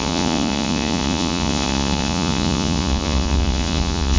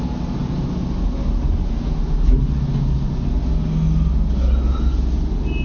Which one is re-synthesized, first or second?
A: first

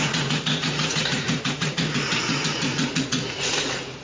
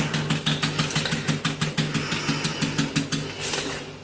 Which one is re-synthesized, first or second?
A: first